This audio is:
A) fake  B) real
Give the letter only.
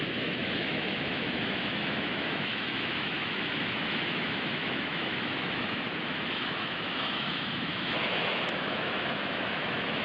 A